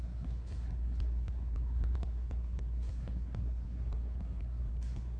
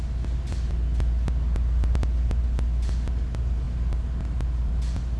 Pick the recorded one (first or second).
second